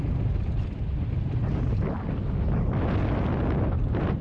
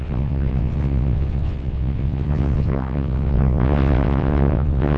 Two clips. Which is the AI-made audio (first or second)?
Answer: second